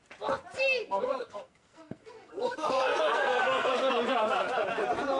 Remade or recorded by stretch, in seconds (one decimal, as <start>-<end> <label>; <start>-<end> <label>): 0.0-0.8 recorded; 0.8-3.9 remade; 3.9-5.2 recorded